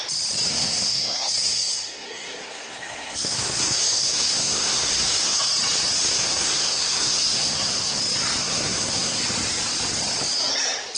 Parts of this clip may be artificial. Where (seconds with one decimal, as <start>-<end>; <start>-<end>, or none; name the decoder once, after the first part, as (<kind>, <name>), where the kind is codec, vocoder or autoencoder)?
0.5-5.4 (codec, SNAC); 6.0-8.0; 8.4-9.2